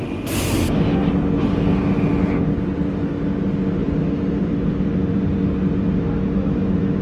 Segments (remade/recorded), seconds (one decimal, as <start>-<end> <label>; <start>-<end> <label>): 0.0-3.8 recorded; 3.8-4.5 remade; 4.5-7.0 recorded